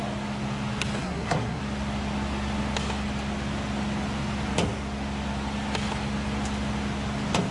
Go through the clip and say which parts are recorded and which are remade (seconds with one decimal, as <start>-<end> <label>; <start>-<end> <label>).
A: 0.0-1.0 recorded; 1.0-1.6 remade; 1.6-7.5 recorded

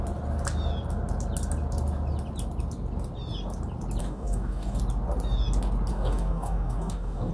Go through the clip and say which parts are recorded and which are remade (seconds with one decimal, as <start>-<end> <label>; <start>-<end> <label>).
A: 0.0-4.0 recorded; 4.0-4.8 remade; 4.8-5.9 recorded; 5.9-7.3 remade

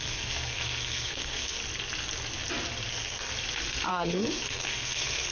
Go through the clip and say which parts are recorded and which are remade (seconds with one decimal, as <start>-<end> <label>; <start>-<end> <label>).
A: 0.0-1.6 remade; 1.6-2.9 recorded; 2.9-3.3 remade; 3.3-3.9 recorded; 3.9-5.3 remade

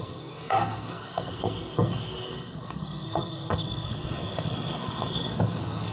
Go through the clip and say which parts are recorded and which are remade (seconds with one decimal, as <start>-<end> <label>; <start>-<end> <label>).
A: 0.0-5.9 remade

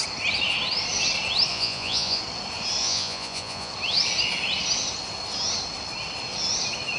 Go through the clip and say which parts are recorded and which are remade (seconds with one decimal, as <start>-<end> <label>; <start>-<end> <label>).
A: 0.0-1.5 recorded; 1.5-2.2 remade; 2.2-2.8 recorded; 2.8-3.7 remade; 3.7-7.0 recorded

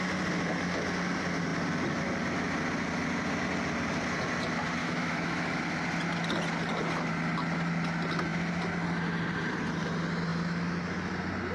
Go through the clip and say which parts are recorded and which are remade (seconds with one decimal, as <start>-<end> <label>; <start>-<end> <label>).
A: 0.0-4.8 recorded; 4.8-5.6 remade; 5.6-11.5 recorded

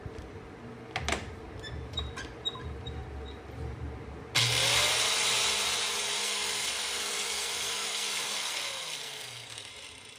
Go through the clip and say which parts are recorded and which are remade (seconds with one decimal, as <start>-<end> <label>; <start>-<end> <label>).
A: 0.0-6.2 recorded; 6.2-9.7 remade; 9.7-10.2 recorded